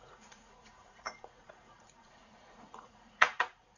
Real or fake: fake